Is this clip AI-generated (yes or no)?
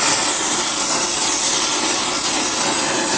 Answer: no